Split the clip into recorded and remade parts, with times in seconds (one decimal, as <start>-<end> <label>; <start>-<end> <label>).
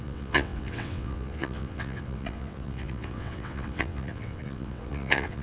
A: 0.0-5.4 remade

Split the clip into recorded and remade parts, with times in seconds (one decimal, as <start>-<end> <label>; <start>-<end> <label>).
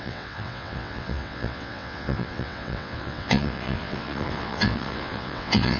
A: 0.0-5.8 remade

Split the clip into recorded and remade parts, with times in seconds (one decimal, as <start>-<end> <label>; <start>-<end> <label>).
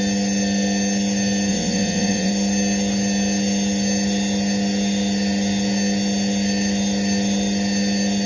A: 0.0-1.5 recorded; 1.5-2.3 remade; 2.3-8.3 recorded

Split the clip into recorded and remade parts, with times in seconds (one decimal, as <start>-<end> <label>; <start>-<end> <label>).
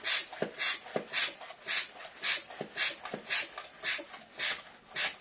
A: 0.0-5.2 recorded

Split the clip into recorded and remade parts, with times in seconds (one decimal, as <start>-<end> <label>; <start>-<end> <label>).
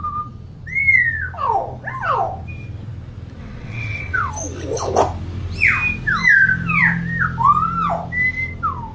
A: 0.0-3.4 recorded; 3.4-4.3 remade; 4.3-8.9 recorded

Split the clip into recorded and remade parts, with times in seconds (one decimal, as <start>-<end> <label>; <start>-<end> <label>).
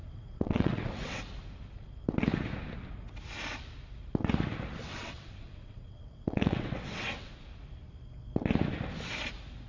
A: 0.0-1.2 remade; 1.2-4.8 recorded; 4.8-7.3 remade; 7.3-9.7 recorded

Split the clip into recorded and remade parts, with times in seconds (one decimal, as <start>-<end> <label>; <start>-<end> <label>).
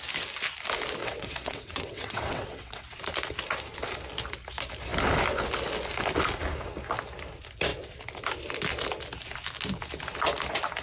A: 0.0-1.0 recorded; 1.0-3.0 remade; 3.0-10.8 recorded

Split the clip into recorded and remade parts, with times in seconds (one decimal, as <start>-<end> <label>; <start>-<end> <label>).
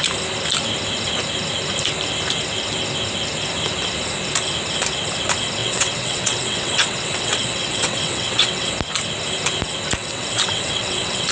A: 0.0-5.6 recorded; 5.6-8.7 remade; 8.7-10.0 recorded; 10.0-11.3 remade